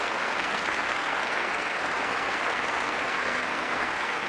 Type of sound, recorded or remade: remade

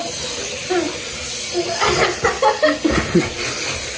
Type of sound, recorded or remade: recorded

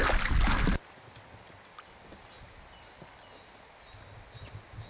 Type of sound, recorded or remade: recorded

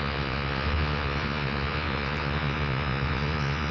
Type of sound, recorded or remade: remade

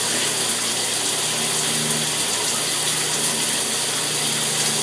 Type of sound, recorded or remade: recorded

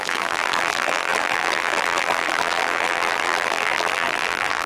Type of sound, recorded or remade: remade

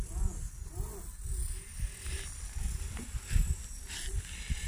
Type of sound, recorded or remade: recorded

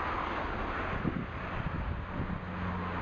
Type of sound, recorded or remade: recorded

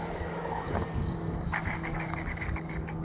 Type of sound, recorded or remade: remade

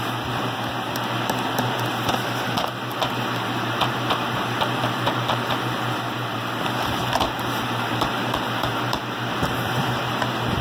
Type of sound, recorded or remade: remade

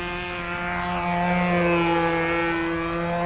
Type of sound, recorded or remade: recorded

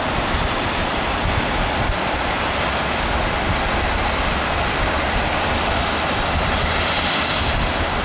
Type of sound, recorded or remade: recorded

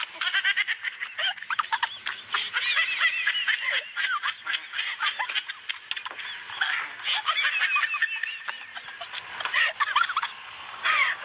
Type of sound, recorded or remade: recorded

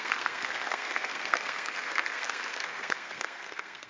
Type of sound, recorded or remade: remade